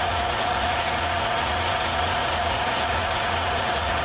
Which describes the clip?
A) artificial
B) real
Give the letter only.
A